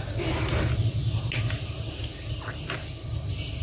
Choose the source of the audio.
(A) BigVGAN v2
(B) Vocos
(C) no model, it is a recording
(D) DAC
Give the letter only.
C